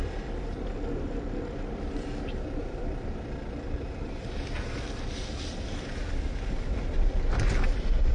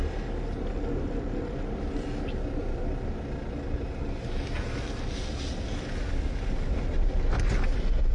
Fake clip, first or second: first